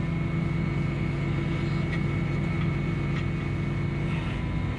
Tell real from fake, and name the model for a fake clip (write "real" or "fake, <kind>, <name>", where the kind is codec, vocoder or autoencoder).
real